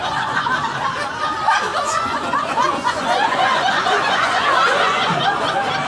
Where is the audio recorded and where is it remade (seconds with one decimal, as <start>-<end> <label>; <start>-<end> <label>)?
0.0-0.5 remade; 0.5-1.7 recorded; 1.7-5.2 remade; 5.2-5.9 recorded

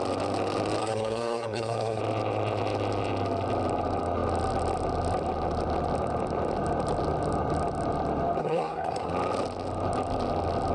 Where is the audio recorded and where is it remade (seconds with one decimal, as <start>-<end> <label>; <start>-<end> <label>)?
0.0-0.8 recorded; 0.8-2.0 remade; 2.0-8.4 recorded; 8.4-9.1 remade; 9.1-10.7 recorded

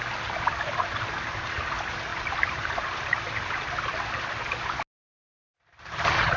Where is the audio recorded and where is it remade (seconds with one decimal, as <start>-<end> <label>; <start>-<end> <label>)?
0.0-2.1 recorded; 2.1-4.3 remade; 4.3-6.4 recorded

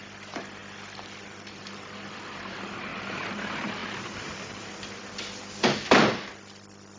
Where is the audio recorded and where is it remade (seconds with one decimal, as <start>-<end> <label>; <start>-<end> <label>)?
0.0-7.0 recorded